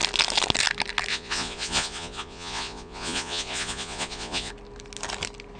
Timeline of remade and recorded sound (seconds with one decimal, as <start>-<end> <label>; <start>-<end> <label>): 0.0-1.1 recorded; 1.1-4.5 remade; 4.5-5.6 recorded